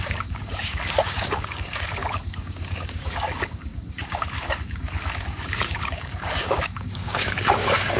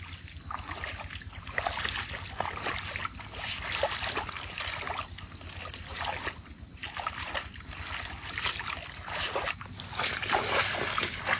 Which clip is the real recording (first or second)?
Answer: second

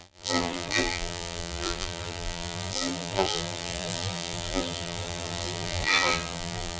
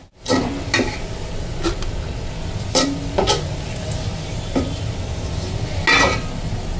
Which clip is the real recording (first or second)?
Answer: second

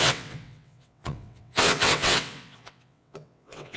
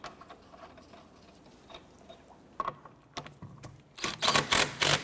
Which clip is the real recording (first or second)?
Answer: second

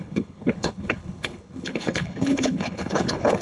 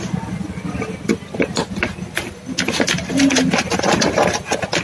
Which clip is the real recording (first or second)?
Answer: second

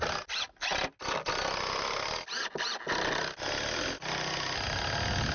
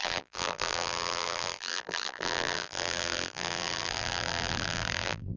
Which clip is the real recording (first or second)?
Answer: first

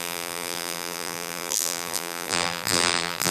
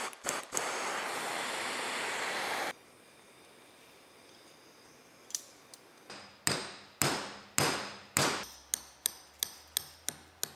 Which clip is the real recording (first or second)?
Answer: second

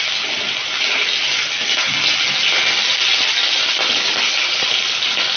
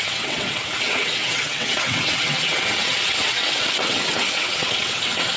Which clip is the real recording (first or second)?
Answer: first